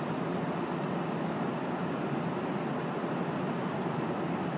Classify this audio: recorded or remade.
recorded